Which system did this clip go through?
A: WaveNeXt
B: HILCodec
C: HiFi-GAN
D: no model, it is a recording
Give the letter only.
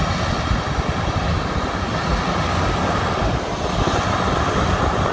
D